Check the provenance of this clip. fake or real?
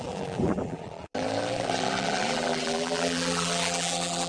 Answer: fake